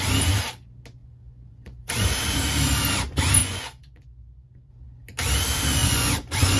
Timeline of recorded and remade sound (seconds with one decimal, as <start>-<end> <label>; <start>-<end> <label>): 0.0-1.0 recorded; 1.0-2.1 remade; 2.1-3.4 recorded; 3.4-4.7 remade; 4.7-5.8 recorded; 5.8-6.6 remade